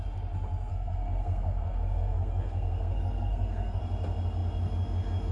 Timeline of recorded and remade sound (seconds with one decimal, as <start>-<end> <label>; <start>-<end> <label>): 0.0-0.7 recorded; 0.7-3.8 remade; 3.8-5.3 recorded

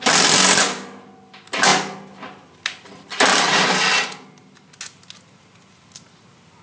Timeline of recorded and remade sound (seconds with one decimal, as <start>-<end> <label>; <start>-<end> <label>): 0.0-6.6 recorded

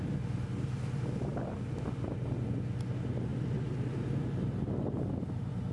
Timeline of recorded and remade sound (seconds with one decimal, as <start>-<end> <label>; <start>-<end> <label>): 0.0-5.7 recorded

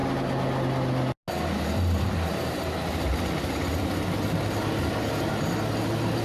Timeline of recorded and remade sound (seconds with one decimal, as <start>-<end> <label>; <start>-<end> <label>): 0.0-6.2 recorded

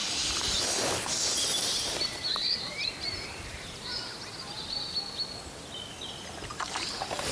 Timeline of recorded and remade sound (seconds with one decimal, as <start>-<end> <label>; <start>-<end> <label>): 0.0-2.4 recorded; 2.4-4.0 remade; 4.0-6.5 recorded; 6.5-7.3 remade

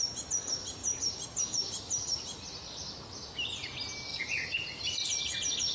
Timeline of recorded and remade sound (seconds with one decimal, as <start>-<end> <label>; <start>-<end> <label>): 0.0-4.1 recorded; 4.1-4.8 remade; 4.8-5.7 recorded

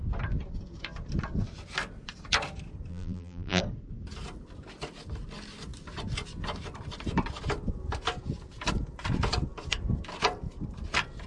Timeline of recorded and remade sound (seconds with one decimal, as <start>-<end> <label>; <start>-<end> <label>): 0.0-2.9 recorded; 2.9-3.6 remade; 3.6-11.3 recorded

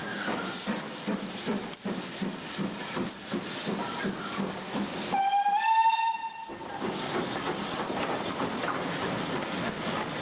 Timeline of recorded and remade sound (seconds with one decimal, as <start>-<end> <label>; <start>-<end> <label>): 0.0-10.2 recorded